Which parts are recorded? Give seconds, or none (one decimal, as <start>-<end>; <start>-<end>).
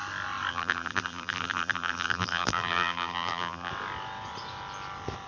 0.0-0.5; 3.7-5.3